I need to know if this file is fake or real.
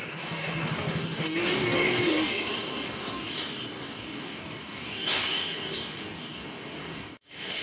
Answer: fake